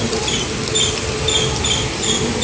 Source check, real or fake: real